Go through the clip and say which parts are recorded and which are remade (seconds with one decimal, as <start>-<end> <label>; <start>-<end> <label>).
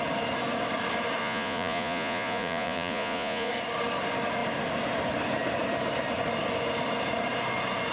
0.0-1.2 recorded; 1.2-3.5 remade; 3.5-7.9 recorded